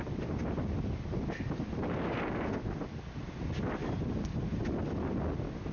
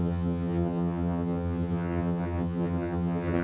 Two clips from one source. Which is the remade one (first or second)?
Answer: second